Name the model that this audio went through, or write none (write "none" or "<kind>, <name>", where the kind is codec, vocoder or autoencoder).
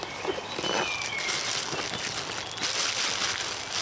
none